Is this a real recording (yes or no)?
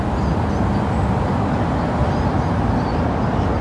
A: yes